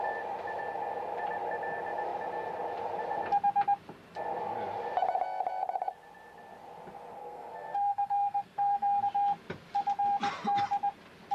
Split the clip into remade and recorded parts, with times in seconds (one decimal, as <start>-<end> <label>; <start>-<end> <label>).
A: 0.0-7.2 recorded; 7.2-9.0 remade; 9.0-11.3 recorded